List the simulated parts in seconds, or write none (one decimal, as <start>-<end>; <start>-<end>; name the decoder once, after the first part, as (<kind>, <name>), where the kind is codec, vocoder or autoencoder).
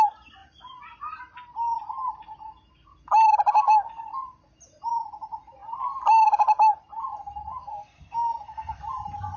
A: 7.5-8.8 (codec, SNAC)